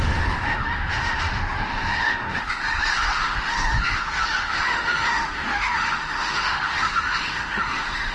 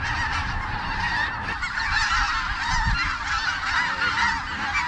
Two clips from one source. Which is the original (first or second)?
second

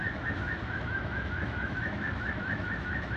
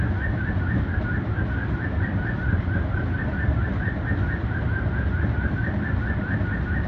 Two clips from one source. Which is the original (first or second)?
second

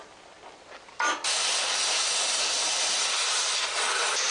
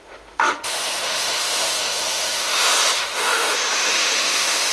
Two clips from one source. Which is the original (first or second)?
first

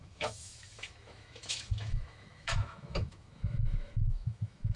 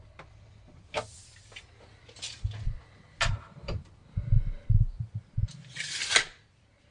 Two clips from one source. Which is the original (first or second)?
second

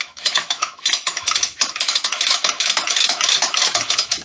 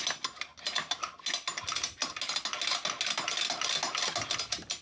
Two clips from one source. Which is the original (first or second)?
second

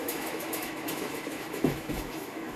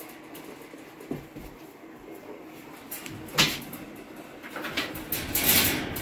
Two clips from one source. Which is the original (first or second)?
second